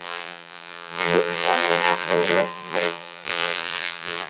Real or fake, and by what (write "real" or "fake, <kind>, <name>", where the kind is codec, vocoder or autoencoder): fake, vocoder, BigVGAN v2